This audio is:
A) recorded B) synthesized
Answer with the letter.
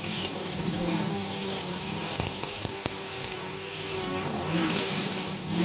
B